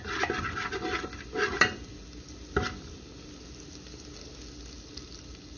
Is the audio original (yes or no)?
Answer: yes